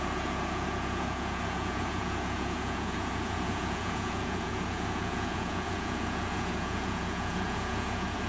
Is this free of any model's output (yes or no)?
no